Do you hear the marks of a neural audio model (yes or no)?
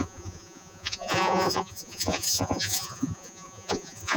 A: yes